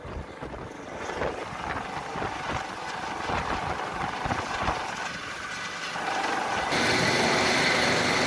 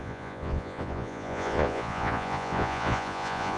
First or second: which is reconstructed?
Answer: second